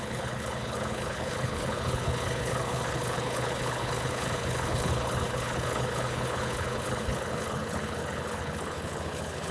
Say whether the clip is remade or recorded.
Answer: remade